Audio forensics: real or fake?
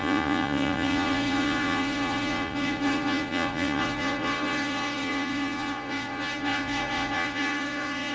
fake